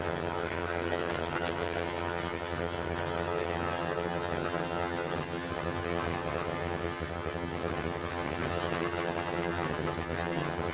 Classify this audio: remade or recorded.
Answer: remade